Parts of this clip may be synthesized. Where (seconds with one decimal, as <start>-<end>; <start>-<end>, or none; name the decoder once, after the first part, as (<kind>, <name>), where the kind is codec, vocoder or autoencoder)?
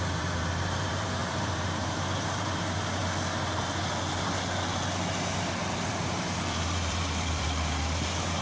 0.0-3.0 (vocoder, BigVGAN v2); 5.9-8.4